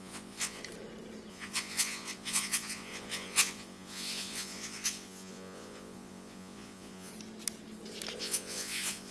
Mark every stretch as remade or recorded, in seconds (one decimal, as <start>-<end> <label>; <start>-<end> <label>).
0.0-0.6 remade; 0.6-1.3 recorded; 1.3-7.1 remade; 7.1-8.2 recorded; 8.2-9.1 remade